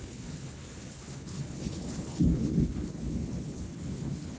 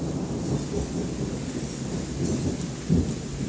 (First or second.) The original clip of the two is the second